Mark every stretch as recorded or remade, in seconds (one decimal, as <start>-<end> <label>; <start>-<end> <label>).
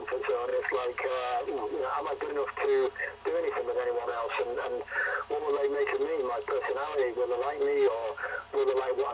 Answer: 0.0-0.5 recorded; 0.5-2.3 remade; 2.3-4.1 recorded; 4.1-8.5 remade; 8.5-9.1 recorded